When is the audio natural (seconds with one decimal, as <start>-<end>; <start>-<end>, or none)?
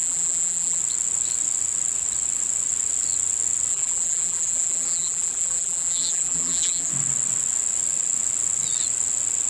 0.8-3.7; 6.9-9.5